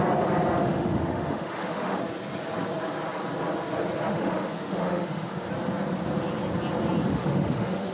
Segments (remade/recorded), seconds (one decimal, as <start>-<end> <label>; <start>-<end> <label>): 0.0-0.6 recorded; 0.6-2.0 remade; 2.0-4.1 recorded; 4.1-5.5 remade; 5.5-7.1 recorded; 7.1-7.9 remade